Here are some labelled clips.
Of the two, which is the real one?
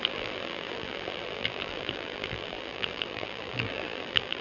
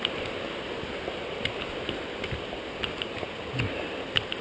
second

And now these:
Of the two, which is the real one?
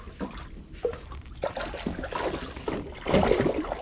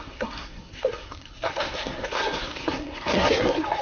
first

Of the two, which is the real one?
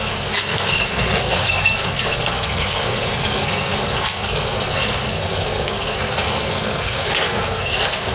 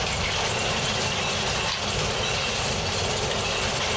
second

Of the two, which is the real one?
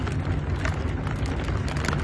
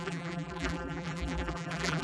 first